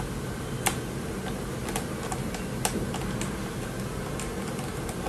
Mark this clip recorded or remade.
recorded